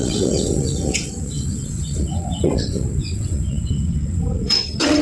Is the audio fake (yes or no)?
yes